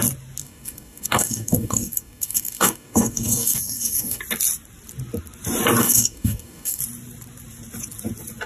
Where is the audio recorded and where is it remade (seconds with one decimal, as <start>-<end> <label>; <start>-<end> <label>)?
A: 0.0-0.4 recorded; 0.4-4.2 remade; 4.2-5.8 recorded; 5.8-6.8 remade; 6.8-8.5 recorded